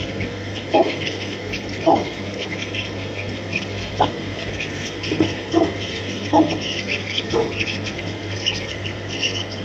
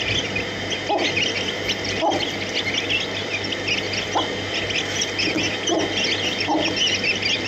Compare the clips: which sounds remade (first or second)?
first